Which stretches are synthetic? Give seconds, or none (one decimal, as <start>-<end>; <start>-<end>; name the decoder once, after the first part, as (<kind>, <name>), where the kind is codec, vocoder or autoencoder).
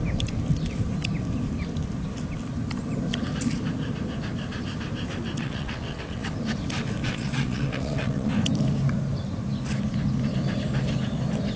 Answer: 5.4-6.3 (vocoder, WaveNeXt); 7.0-8.3